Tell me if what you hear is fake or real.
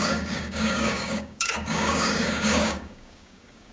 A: fake